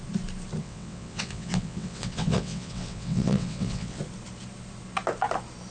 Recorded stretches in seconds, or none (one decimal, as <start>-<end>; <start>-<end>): 0.0-0.6; 4.0-5.7